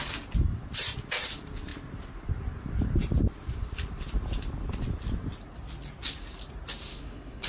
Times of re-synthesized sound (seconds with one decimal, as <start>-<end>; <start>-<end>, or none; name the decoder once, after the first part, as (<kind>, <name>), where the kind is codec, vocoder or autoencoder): 6.9-7.5 (codec, HILCodec)